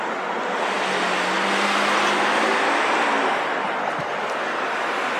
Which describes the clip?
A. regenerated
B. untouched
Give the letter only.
B